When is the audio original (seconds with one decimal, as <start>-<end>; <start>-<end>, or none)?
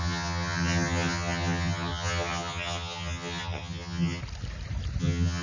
4.2-5.0